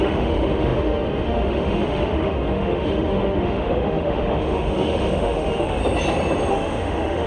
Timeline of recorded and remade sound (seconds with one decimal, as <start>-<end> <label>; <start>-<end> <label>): 0.0-5.8 remade; 5.8-6.5 recorded; 6.5-7.3 remade